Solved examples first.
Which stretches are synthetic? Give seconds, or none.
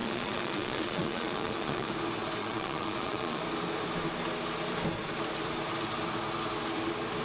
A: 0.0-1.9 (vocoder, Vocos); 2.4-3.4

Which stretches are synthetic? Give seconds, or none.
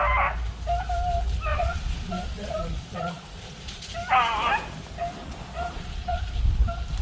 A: 1.5-3.8 (vocoder, Vocos); 5.2-6.2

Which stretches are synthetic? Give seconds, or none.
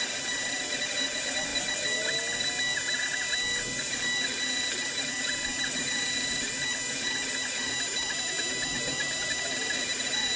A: none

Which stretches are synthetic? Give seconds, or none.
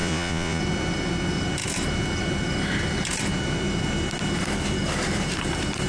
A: 0.0-0.6 (vocoder, Vocos)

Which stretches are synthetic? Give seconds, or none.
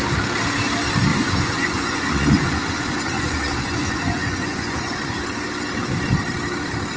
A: 1.1-5.2 (vocoder, Vocos)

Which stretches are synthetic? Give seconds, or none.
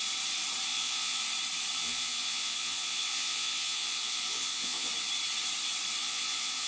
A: 0.7-1.2 (vocoder, Vocos); 1.8-4.9; 6.0-6.7